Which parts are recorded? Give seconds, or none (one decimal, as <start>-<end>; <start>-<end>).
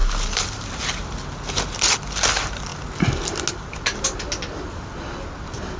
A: 0.0-5.8